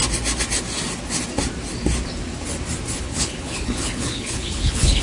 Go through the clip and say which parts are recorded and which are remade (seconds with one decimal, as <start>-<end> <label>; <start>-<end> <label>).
0.0-3.0 recorded; 3.0-5.0 remade